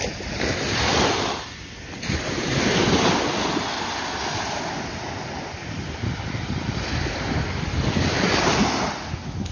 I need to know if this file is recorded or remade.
recorded